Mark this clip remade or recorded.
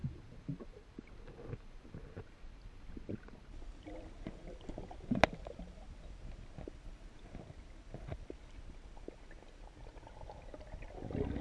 recorded